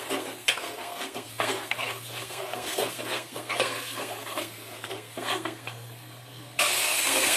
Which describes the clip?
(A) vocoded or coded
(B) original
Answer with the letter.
A